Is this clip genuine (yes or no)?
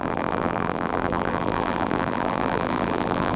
no